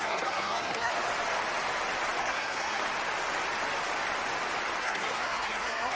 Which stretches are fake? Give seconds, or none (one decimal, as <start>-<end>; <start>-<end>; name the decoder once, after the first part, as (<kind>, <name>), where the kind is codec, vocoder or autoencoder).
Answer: 0.0-0.9 (codec, SNAC); 2.2-2.8; 4.8-6.0